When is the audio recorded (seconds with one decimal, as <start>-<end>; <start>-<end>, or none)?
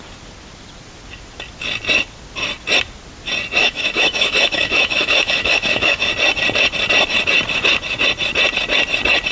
0.0-3.6; 6.1-9.3